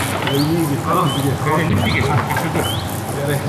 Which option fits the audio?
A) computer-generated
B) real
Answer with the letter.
B